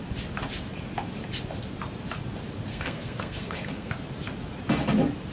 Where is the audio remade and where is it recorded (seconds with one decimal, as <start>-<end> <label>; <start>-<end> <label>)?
0.0-2.7 recorded; 2.7-3.9 remade; 3.9-5.3 recorded